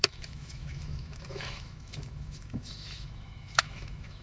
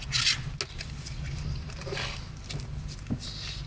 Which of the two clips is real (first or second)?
second